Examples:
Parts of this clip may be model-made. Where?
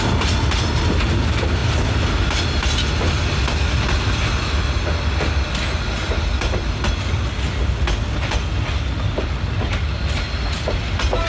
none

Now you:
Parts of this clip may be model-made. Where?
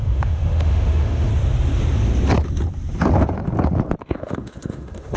0.0-1.3 (autoencoder, DAC-VAE); 4.0-5.2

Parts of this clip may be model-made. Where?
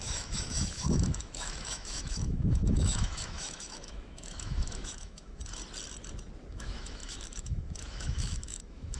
0.0-5.4 (autoencoder, DAC-VAE); 6.5-9.0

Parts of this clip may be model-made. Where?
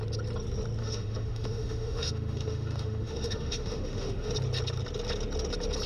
0.8-4.3 (autoencoder, DAC-VAE)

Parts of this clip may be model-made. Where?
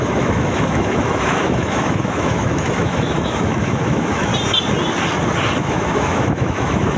0.0-4.3 (autoencoder, DAC-VAE); 5.6-7.0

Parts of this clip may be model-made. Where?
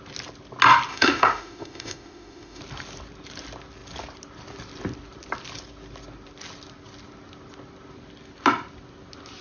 0.9-2.6 (autoencoder, DAC-VAE)